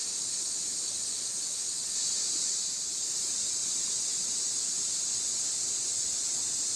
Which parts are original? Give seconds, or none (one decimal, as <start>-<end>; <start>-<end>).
0.0-6.8